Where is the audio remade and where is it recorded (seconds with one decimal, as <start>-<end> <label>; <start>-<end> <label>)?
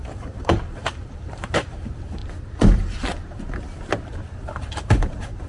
0.0-2.2 remade; 2.2-4.1 recorded; 4.1-5.5 remade